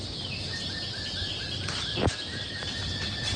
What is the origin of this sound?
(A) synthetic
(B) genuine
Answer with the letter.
B